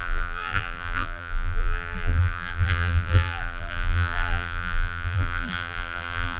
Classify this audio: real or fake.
fake